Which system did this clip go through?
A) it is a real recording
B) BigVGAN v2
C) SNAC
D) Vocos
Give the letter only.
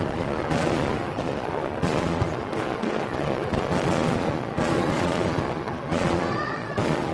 D